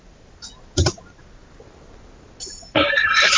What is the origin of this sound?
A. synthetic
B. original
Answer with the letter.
B